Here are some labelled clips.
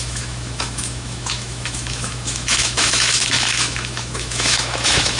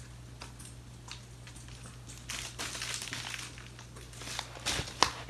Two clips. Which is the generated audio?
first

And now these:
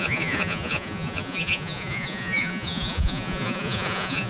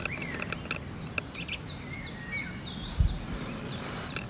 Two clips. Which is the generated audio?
first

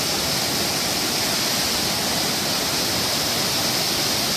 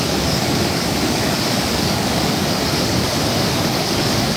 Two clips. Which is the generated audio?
second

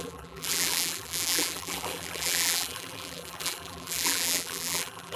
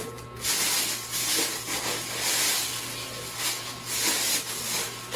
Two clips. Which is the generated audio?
first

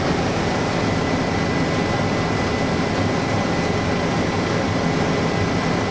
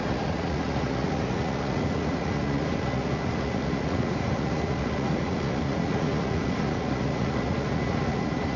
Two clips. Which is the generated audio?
second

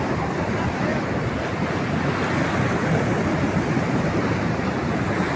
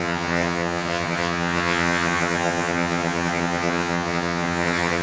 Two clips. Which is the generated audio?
second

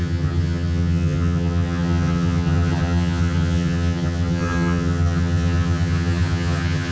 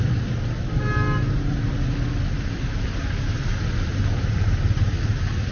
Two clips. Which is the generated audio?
first